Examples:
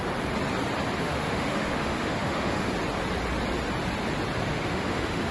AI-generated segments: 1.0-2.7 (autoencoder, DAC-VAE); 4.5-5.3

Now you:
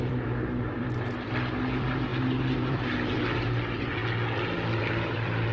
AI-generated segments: 0.0-2.1 (vocoder, BigVGAN v2); 2.6-4.0; 4.8-5.5

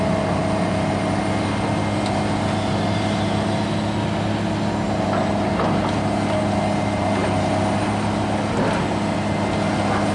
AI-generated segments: none